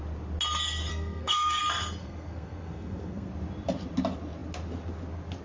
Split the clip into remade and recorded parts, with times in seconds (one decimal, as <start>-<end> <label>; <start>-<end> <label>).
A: 0.0-0.9 recorded; 0.9-1.6 remade; 1.6-2.0 recorded; 2.0-3.3 remade; 3.3-5.4 recorded